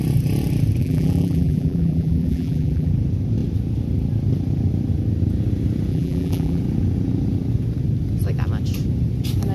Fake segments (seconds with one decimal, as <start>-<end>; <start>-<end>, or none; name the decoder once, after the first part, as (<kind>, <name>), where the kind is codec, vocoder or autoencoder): 0.8-2.9 (vocoder, BigVGAN v2); 5.9-6.6